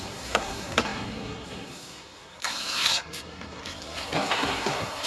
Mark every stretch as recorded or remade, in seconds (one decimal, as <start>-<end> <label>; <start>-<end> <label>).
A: 0.0-5.1 remade